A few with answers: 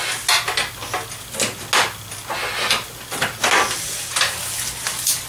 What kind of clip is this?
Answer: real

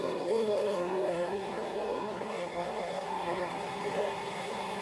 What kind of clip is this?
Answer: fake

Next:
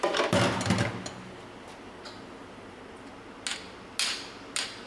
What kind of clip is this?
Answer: real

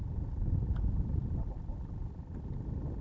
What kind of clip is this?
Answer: real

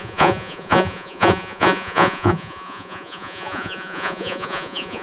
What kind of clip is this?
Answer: fake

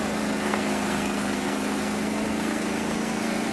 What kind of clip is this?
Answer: fake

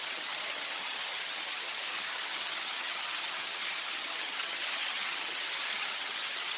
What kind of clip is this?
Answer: fake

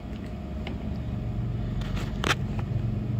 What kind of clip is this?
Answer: real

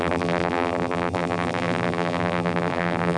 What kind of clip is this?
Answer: fake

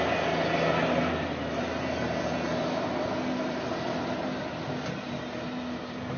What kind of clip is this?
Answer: real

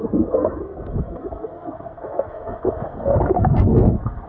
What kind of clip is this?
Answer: fake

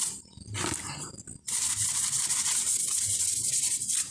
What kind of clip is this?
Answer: real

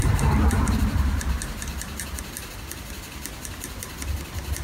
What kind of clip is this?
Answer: real